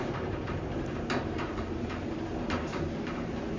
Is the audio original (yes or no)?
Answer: no